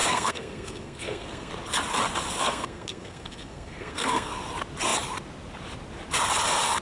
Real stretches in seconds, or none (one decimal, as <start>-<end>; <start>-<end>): 1.5-2.4; 4.4-6.8